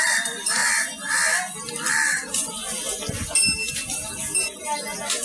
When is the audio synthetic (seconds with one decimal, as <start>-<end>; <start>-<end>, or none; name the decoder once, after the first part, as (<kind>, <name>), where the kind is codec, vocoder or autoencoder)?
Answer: none